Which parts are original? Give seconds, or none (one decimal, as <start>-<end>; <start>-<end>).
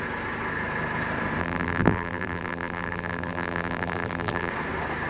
0.0-1.4; 4.5-5.1